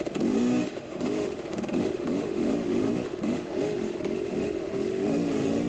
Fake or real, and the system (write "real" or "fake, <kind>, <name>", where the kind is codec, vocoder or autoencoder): fake, autoencoder, DAC-VAE